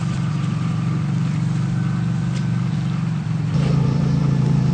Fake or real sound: fake